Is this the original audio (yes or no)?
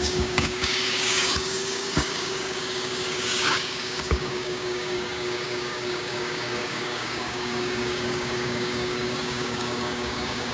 no